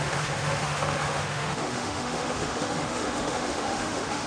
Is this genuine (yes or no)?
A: no